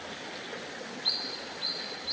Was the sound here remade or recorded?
recorded